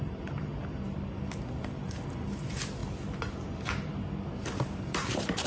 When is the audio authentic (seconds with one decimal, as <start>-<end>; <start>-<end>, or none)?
0.5-1.6; 2.8-4.5

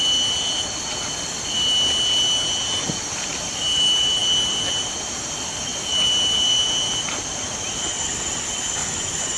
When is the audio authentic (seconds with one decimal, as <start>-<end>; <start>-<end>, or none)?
0.0-8.8

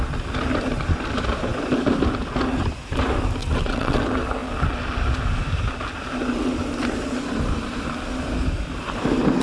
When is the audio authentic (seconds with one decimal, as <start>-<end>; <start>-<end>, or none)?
0.0-3.4; 4.0-9.4

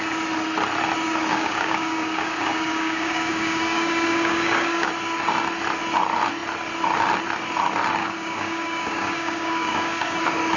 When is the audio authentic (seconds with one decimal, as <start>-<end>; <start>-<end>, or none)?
0.0-1.3; 4.9-8.0; 10.2-10.6